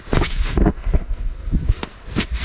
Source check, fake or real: fake